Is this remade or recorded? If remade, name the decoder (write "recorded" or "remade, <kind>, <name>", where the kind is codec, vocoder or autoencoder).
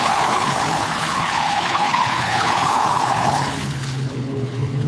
remade, codec, HILCodec